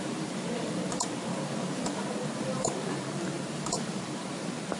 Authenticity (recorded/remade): remade